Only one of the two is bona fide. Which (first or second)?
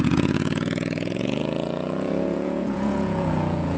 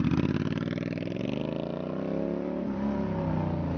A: second